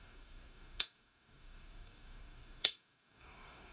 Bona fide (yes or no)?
no